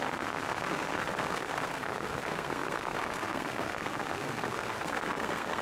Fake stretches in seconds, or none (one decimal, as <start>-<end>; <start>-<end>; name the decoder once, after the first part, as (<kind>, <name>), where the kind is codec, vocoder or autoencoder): 0.0-5.6 (codec, SNAC)